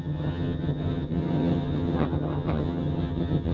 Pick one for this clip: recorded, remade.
remade